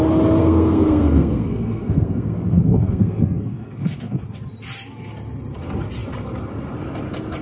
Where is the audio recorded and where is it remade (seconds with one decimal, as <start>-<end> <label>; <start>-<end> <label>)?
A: 0.0-0.4 recorded; 0.4-4.2 remade; 4.2-7.4 recorded